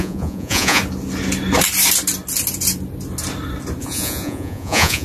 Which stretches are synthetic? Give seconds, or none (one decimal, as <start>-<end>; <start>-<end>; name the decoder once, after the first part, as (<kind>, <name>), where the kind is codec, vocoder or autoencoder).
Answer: 0.0-0.8 (vocoder, Vocos); 3.8-5.0

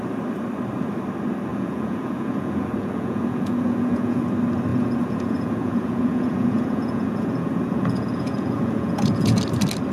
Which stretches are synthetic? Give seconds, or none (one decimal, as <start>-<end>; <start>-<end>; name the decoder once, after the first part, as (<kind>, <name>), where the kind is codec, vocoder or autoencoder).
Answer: 1.5-4.2 (vocoder, Vocos); 4.7-9.4

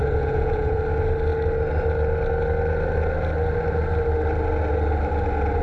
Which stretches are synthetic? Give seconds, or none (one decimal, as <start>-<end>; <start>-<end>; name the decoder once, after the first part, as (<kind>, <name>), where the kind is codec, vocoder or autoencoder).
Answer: 0.0-0.8 (vocoder, Vocos)

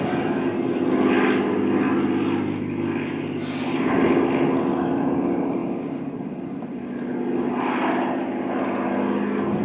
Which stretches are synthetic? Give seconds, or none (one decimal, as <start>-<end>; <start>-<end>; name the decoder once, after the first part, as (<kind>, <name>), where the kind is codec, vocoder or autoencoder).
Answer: none

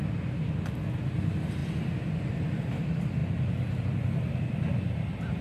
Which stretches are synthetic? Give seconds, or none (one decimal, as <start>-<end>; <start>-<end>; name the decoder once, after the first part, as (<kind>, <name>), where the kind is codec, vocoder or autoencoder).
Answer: none